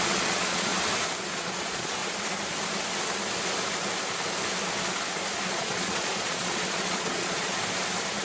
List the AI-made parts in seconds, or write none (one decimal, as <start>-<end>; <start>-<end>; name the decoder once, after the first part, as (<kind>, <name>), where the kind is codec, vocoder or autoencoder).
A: 0.0-0.7 (vocoder, Vocos); 1.3-2.0; 5.5-7.6